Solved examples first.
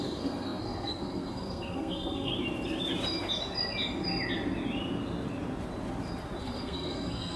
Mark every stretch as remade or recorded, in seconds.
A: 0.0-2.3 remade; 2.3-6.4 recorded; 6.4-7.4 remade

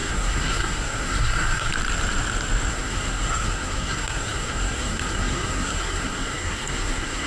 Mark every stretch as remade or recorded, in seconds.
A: 0.0-1.7 remade; 1.7-2.7 recorded; 2.7-7.3 remade

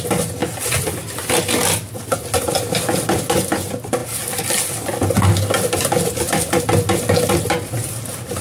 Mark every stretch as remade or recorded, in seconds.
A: 0.0-8.4 recorded

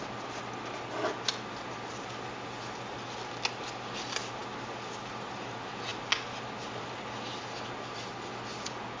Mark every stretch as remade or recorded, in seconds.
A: 0.0-9.0 recorded

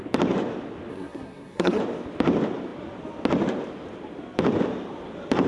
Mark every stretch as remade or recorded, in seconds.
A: 0.0-0.9 recorded; 0.9-1.8 remade; 1.8-5.5 recorded

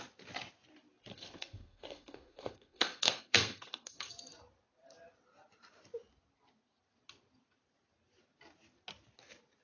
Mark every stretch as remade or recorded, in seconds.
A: 0.0-1.1 recorded; 1.1-4.1 remade; 4.1-9.6 recorded